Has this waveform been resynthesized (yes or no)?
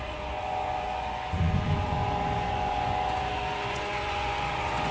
yes